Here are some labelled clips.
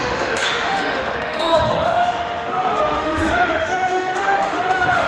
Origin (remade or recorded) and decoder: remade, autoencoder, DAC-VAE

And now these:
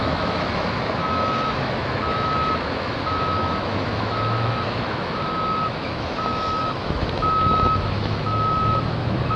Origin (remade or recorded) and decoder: remade, autoencoder, DAC-VAE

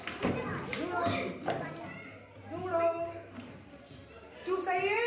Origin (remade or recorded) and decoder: recorded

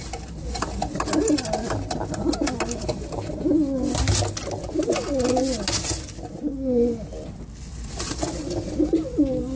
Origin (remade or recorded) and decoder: recorded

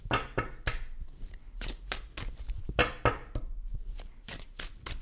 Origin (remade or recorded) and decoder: recorded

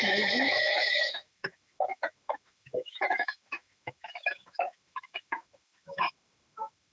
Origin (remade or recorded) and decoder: remade, autoencoder, DAC-VAE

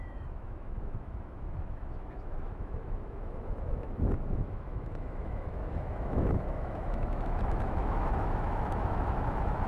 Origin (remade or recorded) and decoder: remade, autoencoder, DAC-VAE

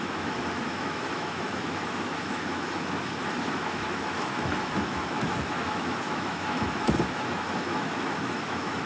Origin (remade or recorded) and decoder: remade, autoencoder, DAC-VAE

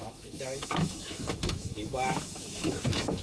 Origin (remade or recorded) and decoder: remade, autoencoder, DAC-VAE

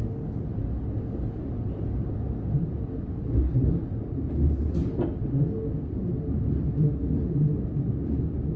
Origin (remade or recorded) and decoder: recorded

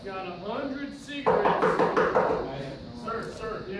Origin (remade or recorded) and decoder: recorded